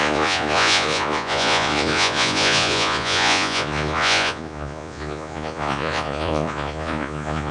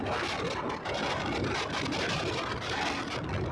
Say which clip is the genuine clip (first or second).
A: second